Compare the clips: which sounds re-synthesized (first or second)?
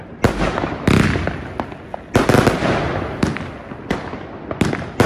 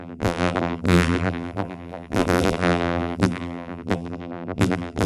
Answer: second